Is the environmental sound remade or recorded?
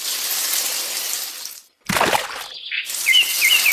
recorded